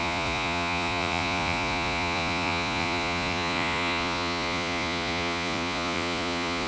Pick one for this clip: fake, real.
fake